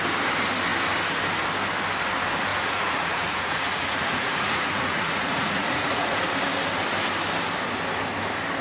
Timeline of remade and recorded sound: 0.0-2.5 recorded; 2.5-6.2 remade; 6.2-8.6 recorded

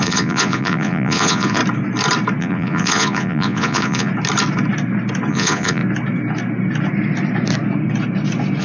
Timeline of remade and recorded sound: 0.0-1.6 remade; 1.6-2.4 recorded; 2.4-4.1 remade; 4.1-5.3 recorded; 5.3-5.8 remade; 5.8-8.6 recorded